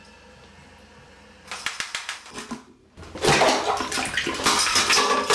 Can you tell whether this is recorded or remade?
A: recorded